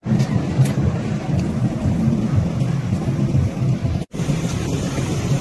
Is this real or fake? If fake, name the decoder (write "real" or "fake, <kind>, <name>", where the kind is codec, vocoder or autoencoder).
real